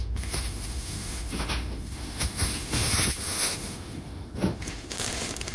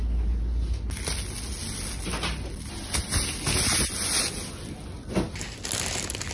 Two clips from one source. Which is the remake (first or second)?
first